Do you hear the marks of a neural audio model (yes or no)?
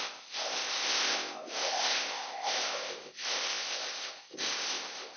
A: yes